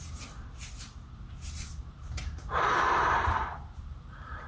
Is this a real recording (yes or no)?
no